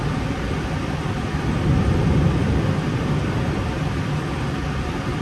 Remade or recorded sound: recorded